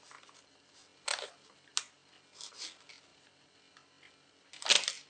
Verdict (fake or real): real